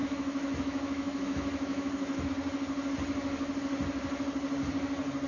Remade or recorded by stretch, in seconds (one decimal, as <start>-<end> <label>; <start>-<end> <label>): 0.0-2.3 remade; 2.3-5.3 recorded